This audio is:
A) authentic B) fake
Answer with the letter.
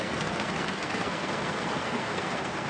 B